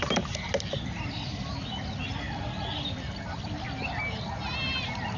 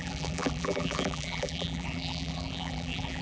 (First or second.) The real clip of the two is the first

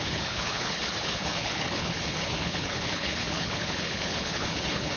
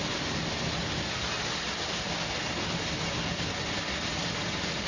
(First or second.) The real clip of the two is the second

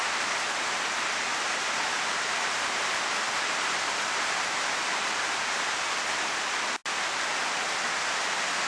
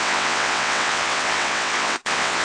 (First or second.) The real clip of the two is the first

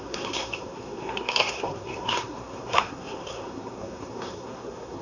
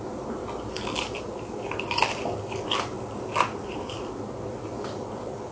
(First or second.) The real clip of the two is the second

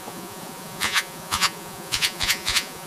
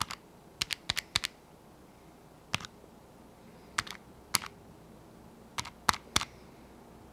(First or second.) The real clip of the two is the second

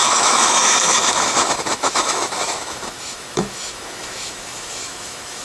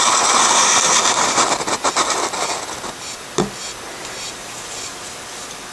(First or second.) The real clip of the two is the second